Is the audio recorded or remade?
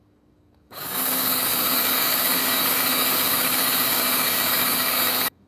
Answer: remade